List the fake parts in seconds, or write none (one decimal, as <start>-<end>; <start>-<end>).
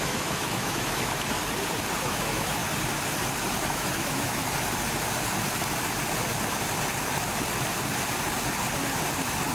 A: 0.0-1.4; 2.0-2.6; 3.6-4.4